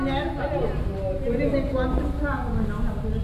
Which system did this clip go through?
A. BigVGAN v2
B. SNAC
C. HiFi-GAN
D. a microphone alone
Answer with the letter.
D